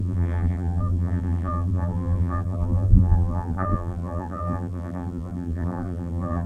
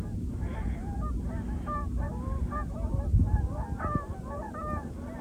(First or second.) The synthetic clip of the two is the first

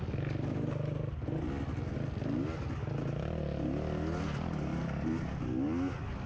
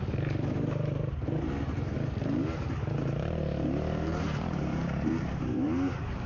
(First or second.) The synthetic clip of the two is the second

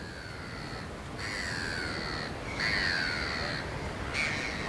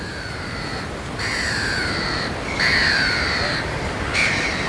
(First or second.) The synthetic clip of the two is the second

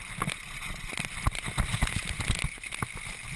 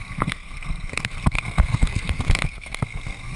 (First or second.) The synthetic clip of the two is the second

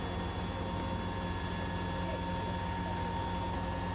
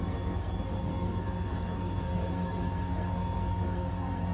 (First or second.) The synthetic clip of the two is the second